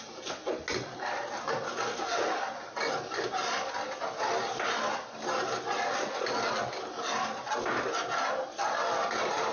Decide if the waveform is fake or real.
real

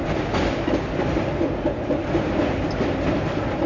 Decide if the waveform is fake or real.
real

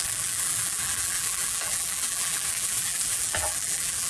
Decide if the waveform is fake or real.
fake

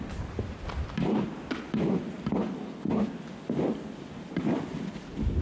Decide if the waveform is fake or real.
real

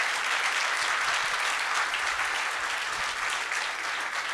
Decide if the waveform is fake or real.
real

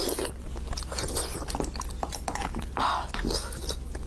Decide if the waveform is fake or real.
real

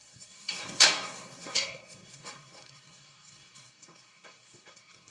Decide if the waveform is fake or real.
fake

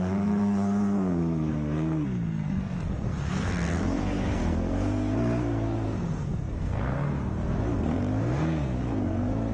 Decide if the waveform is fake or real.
fake